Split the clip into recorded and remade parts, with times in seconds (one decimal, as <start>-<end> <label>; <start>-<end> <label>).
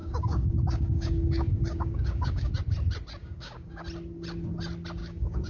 0.0-2.5 remade; 2.5-3.2 recorded; 3.2-3.8 remade; 3.8-5.0 recorded; 5.0-5.5 remade